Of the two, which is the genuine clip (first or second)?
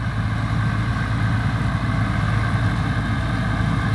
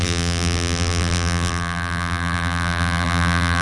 first